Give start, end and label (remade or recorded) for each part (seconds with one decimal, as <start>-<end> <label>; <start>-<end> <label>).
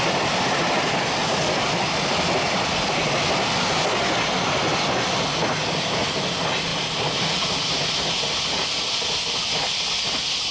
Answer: 0.0-10.5 recorded